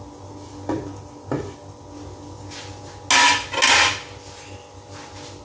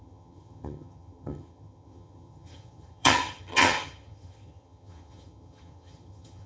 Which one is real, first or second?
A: first